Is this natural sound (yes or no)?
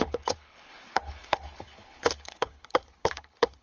no